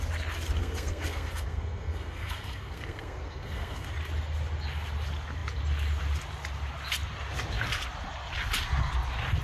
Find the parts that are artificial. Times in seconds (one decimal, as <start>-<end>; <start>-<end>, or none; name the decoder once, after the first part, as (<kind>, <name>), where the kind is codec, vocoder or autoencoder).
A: 0.6-3.9 (codec, SNAC)